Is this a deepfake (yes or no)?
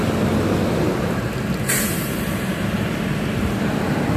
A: no